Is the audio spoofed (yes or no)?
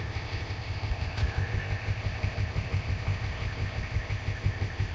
yes